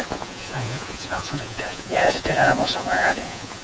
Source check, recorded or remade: remade